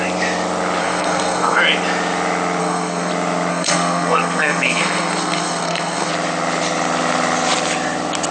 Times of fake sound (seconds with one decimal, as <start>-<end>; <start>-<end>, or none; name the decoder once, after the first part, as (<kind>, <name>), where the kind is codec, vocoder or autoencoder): 0.8-1.6 (codec, SNAC); 2.6-3.1; 3.5-6.1